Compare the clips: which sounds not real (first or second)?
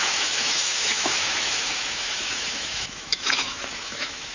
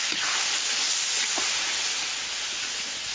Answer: first